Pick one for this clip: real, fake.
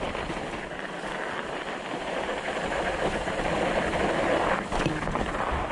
fake